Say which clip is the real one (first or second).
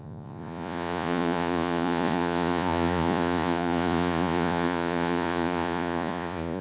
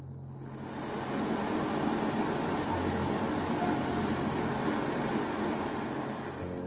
second